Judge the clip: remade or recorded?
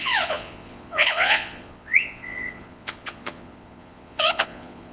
remade